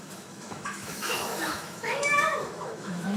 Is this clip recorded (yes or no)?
no